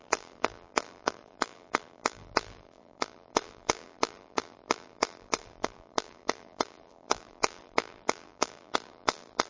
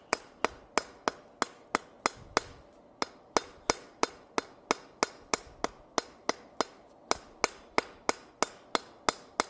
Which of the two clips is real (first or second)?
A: second